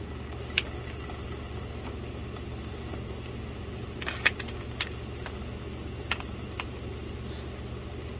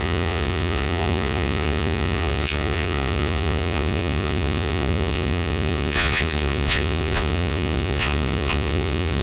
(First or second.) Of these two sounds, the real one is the first